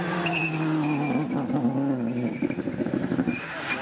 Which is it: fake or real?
real